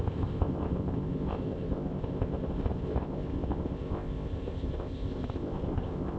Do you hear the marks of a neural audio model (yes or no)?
yes